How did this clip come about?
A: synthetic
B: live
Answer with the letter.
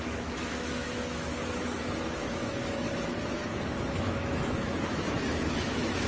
A